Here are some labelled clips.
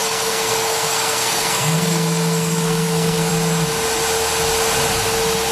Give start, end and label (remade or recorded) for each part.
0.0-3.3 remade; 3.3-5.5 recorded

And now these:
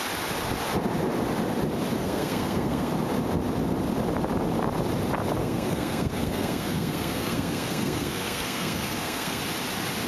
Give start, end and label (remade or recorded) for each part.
0.0-2.0 recorded; 2.0-2.9 remade; 2.9-5.4 recorded; 5.4-9.4 remade; 9.4-10.1 recorded

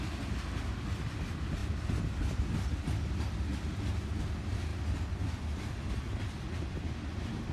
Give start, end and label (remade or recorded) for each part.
0.0-7.5 recorded

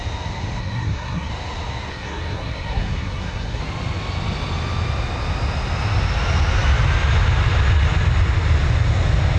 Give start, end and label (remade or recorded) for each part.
0.0-0.6 recorded; 0.6-1.3 remade; 1.3-1.9 recorded; 1.9-3.6 remade; 3.6-9.4 recorded

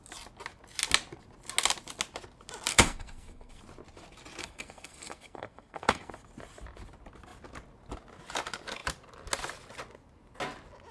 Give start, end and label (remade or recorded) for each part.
0.0-2.7 recorded; 2.7-3.6 remade; 3.6-4.4 recorded; 4.4-6.1 remade; 6.1-10.9 recorded

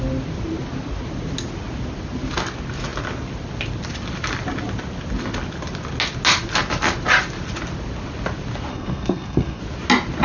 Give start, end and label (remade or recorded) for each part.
0.0-8.7 recorded; 8.7-9.6 remade; 9.6-10.2 recorded

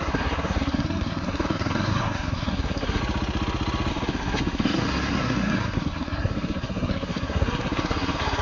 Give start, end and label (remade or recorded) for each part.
0.0-3.0 remade; 3.0-3.9 recorded; 3.9-8.4 remade

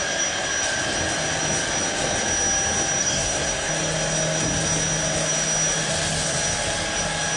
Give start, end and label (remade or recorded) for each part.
0.0-3.0 recorded; 3.0-3.7 remade; 3.7-7.4 recorded